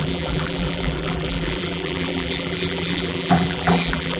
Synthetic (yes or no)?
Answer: yes